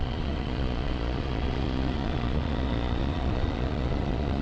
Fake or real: fake